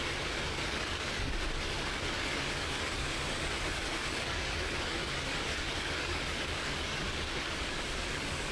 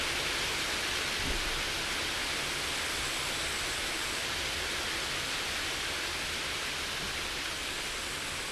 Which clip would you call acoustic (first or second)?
second